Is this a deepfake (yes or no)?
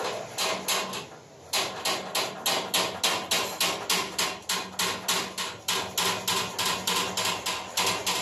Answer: no